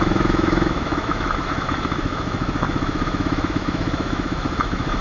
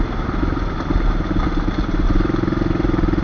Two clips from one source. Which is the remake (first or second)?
first